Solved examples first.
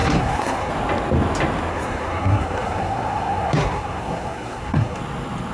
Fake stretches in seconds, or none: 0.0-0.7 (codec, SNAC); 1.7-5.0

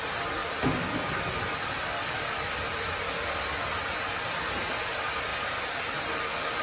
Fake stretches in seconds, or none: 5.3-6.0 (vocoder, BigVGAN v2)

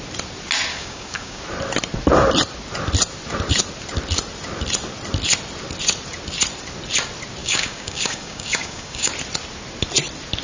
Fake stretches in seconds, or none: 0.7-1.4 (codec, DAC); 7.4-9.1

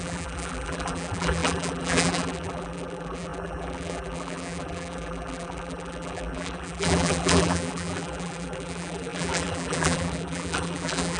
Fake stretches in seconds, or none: 0.0-11.2 (vocoder, BigVGAN v2)

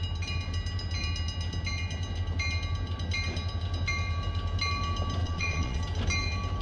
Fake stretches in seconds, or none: 5.2-5.8 (vocoder, Vocos)